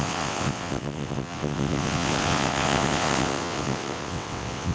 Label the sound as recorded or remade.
remade